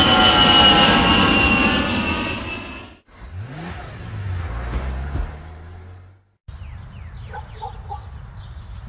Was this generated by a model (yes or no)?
no